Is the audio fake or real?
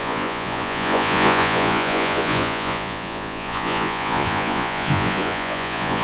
fake